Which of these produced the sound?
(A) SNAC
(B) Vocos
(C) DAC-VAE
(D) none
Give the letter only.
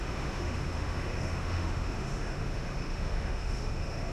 C